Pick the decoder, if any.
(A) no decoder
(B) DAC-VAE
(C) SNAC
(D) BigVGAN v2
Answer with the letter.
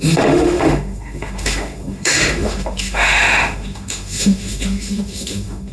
B